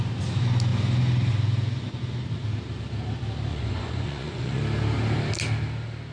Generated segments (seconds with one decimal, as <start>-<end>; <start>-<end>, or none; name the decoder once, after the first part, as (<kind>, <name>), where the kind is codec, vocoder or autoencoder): 3.5-4.6 (vocoder, Vocos)